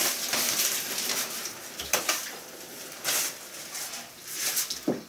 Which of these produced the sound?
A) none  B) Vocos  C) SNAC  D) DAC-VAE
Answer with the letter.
A